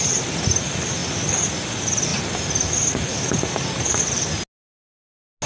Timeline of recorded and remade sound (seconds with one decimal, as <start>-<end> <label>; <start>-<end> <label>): 0.0-5.5 recorded